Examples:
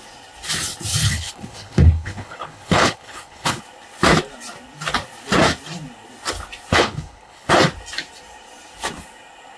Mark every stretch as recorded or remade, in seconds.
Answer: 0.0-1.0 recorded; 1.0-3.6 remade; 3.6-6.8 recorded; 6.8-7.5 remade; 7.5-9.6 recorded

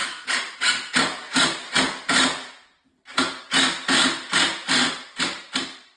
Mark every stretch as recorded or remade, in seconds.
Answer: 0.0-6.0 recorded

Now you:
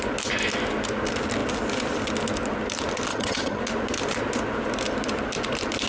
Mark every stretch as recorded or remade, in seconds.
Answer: 0.0-3.1 recorded; 3.1-3.6 remade; 3.6-5.9 recorded

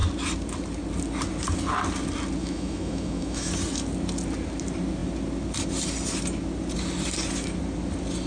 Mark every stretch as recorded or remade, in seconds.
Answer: 0.0-2.4 recorded; 2.4-3.5 remade; 3.5-8.3 recorded

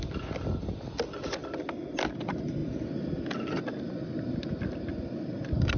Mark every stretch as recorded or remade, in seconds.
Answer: 0.0-5.8 recorded